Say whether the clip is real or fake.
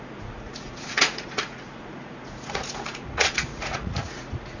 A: fake